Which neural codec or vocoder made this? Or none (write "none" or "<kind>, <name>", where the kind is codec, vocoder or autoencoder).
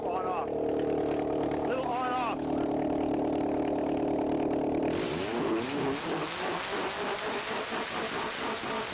none